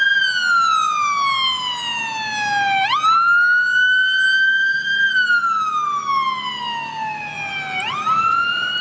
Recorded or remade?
recorded